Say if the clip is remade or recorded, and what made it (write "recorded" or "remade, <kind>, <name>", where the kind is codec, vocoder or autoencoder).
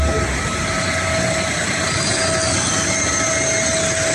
recorded